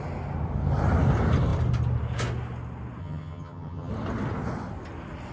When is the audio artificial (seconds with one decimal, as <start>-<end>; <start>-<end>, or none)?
3.0-3.9

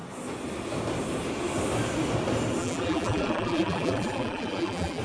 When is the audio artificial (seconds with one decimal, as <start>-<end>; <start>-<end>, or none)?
2.6-5.0

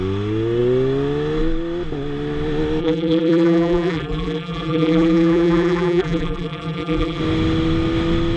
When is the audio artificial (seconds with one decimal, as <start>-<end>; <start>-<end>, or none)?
2.8-7.2

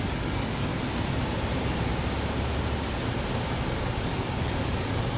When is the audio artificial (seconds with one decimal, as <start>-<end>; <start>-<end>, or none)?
0.0-0.7; 3.8-5.2

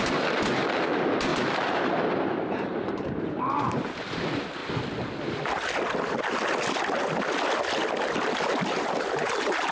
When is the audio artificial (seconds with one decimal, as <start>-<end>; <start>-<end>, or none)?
0.0-4.6; 8.6-9.7